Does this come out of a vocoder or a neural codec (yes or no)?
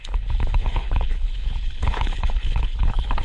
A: yes